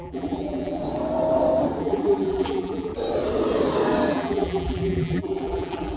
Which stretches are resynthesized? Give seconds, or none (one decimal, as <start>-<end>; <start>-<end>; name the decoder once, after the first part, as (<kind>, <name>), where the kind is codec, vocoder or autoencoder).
0.0-0.8 (vocoder, BigVGAN v2); 1.8-2.9; 4.1-6.0